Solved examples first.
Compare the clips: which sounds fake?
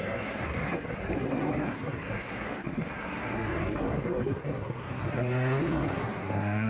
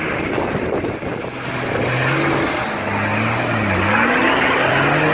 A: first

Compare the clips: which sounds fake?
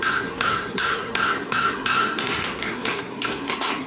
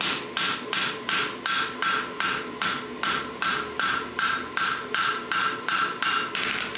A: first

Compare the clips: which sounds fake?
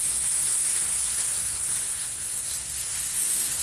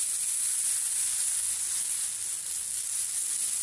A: first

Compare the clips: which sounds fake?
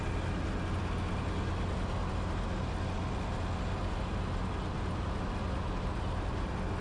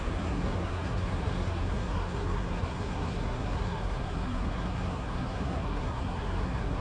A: second